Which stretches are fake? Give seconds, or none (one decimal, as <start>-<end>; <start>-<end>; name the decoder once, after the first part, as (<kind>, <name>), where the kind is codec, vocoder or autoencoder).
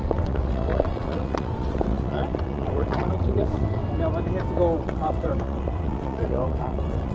0.0-3.8 (vocoder, WaveNeXt); 4.8-7.1